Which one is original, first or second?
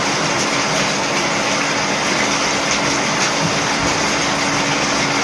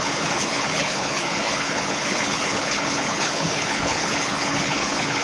first